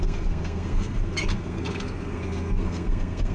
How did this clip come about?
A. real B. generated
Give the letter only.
B